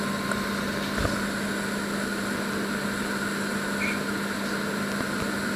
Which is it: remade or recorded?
recorded